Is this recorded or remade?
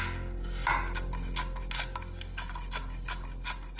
recorded